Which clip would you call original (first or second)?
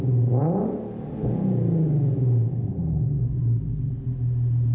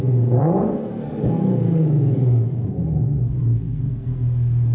first